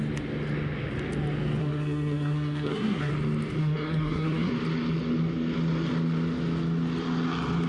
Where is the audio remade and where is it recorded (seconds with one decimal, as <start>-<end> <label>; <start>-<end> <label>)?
0.0-1.6 recorded; 1.6-3.1 remade; 3.1-3.6 recorded; 3.6-4.5 remade; 4.5-7.7 recorded